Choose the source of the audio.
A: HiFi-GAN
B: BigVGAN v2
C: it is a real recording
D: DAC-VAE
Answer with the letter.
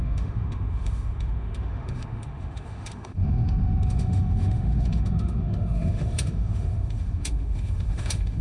D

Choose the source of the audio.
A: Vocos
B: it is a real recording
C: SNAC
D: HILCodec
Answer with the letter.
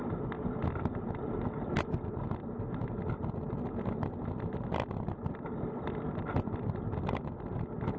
B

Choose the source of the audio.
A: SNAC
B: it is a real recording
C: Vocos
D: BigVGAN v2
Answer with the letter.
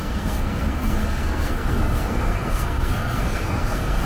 A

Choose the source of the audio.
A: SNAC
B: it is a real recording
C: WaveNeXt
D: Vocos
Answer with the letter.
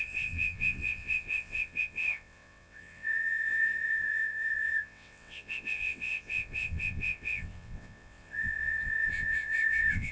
C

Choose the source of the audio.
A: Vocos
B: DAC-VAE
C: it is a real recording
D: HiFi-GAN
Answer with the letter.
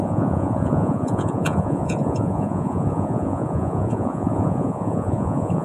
A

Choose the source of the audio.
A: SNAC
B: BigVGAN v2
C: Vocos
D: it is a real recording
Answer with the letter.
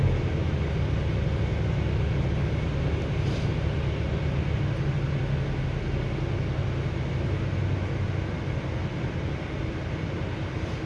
D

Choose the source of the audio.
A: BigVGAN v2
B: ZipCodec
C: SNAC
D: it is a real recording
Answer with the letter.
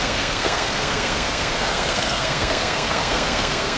C